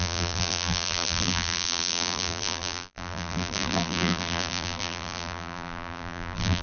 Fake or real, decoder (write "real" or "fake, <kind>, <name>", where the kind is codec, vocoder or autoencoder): fake, vocoder, BigVGAN v2